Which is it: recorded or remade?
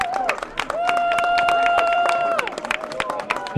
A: remade